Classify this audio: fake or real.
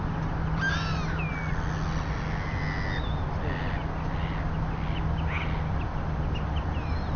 real